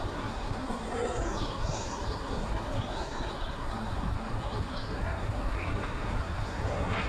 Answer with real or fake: fake